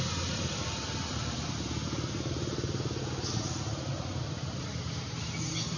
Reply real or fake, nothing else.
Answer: real